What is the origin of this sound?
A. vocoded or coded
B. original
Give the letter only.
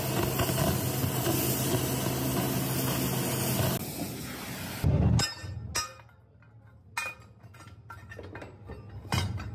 B